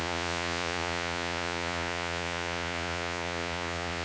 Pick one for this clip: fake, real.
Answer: fake